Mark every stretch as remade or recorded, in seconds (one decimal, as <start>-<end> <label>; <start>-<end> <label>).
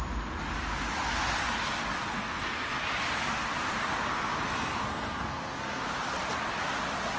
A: 0.0-2.1 recorded; 2.1-2.8 remade; 2.8-4.1 recorded; 4.1-5.8 remade; 5.8-7.2 recorded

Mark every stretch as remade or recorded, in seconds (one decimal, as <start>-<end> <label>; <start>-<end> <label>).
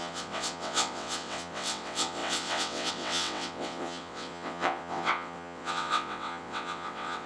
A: 0.0-7.3 remade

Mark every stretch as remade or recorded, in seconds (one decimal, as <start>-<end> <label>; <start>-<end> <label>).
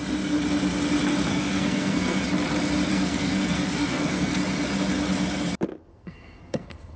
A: 0.0-1.3 recorded; 1.3-2.2 remade; 2.2-2.9 recorded; 2.9-4.3 remade; 4.3-5.9 recorded; 5.9-7.0 remade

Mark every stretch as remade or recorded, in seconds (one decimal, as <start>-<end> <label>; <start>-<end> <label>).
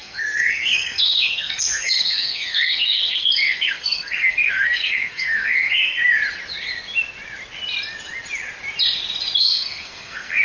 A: 0.0-6.0 remade; 6.0-9.4 recorded; 9.4-10.4 remade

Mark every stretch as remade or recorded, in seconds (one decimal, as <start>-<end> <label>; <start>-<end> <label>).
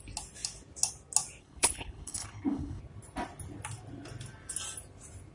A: 0.0-1.4 recorded; 1.4-2.8 remade; 2.8-5.3 recorded